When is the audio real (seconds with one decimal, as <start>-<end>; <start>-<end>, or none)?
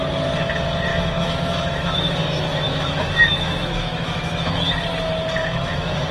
0.0-0.9; 4.6-5.4